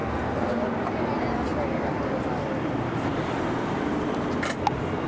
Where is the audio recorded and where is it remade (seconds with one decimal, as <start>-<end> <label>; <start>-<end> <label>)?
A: 0.0-0.5 remade; 0.5-5.1 recorded